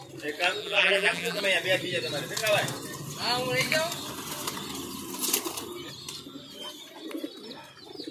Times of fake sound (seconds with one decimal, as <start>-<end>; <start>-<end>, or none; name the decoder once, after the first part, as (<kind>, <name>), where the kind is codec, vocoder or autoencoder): 0.6-1.4 (vocoder, BigVGAN v2)